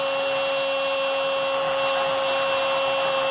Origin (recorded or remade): recorded